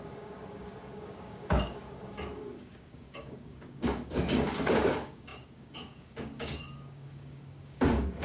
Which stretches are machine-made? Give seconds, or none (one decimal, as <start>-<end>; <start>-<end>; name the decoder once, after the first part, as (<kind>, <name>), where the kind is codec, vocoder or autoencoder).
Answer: 0.0-8.2 (codec, DAC)